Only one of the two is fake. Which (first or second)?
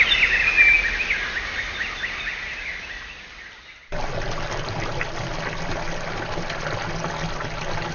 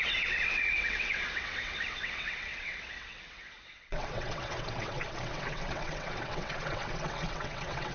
second